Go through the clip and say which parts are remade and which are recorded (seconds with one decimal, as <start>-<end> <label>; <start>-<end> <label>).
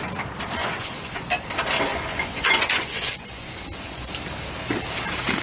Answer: 0.0-0.6 recorded; 0.6-1.3 remade; 1.3-1.9 recorded; 1.9-4.1 remade; 4.1-5.4 recorded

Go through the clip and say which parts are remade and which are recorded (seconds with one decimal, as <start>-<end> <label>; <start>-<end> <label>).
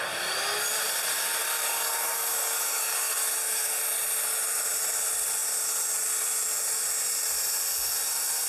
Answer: 0.0-1.4 recorded; 1.4-3.8 remade; 3.8-8.5 recorded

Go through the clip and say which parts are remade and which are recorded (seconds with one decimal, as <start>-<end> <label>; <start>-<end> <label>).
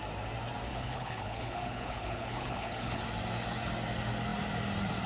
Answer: 0.0-0.7 recorded; 0.7-3.0 remade; 3.0-5.1 recorded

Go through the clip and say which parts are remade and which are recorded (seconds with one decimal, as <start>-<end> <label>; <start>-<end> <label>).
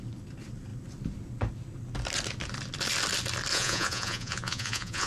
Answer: 0.0-3.5 recorded; 3.5-5.1 remade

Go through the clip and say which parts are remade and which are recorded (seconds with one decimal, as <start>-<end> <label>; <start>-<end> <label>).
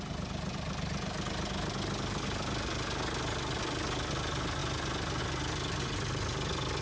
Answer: 0.0-6.8 recorded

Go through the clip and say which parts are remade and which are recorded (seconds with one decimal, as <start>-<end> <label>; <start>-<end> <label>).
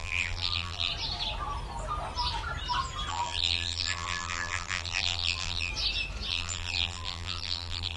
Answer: 0.0-0.9 remade; 0.9-3.1 recorded; 3.1-5.7 remade; 5.7-6.3 recorded; 6.3-8.0 remade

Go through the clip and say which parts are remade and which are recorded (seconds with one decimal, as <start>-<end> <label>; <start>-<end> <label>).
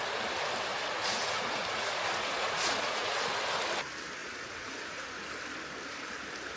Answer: 0.0-0.7 recorded; 0.7-3.4 remade; 3.4-4.2 recorded; 4.2-5.1 remade; 5.1-6.6 recorded